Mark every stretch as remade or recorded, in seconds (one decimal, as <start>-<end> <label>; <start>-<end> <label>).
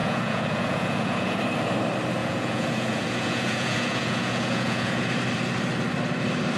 0.0-1.4 remade; 1.4-2.2 recorded; 2.2-5.1 remade; 5.1-6.6 recorded